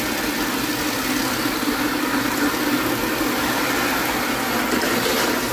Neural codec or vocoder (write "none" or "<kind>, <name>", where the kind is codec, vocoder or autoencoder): none